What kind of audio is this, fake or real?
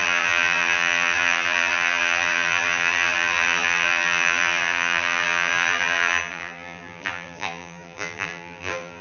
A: fake